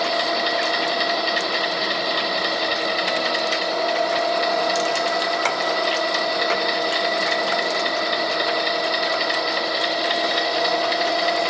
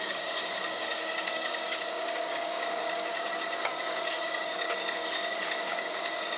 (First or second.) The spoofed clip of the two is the second